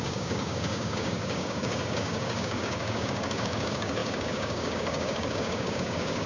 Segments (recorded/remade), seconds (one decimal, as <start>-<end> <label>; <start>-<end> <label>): 0.0-6.3 remade